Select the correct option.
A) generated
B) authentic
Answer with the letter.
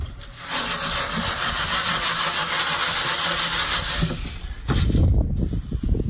B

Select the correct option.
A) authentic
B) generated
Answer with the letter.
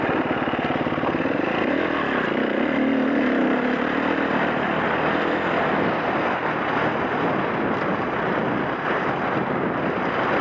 A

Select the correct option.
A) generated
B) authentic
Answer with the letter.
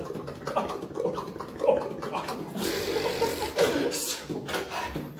B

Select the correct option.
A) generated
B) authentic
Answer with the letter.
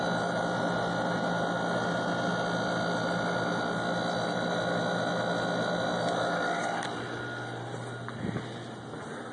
B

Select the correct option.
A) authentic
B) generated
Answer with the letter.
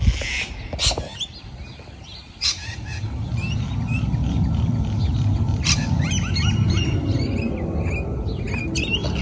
A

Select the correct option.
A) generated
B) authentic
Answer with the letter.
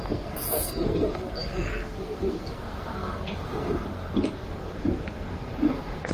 A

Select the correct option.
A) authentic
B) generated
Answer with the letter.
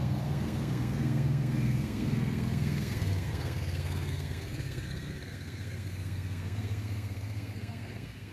B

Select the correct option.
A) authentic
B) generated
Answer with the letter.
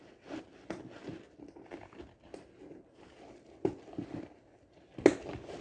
A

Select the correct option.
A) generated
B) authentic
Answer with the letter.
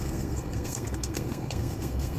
A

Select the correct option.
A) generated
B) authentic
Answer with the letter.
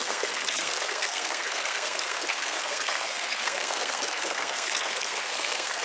A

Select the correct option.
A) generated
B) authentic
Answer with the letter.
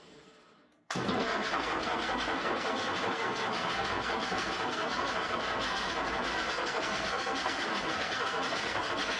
A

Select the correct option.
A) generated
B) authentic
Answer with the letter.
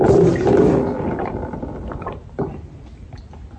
B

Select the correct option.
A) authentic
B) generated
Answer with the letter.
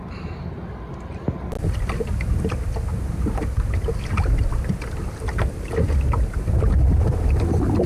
A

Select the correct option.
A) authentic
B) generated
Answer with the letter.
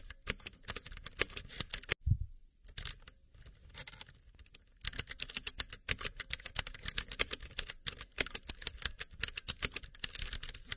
A